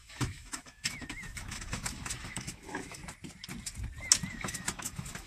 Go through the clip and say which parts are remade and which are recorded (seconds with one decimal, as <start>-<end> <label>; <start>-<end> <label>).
0.0-3.0 remade; 3.0-4.3 recorded; 4.3-5.3 remade